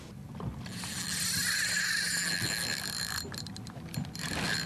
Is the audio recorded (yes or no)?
yes